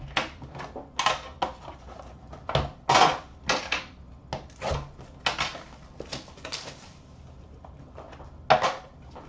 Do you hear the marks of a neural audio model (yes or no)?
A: no